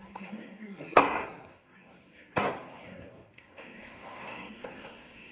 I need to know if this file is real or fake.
fake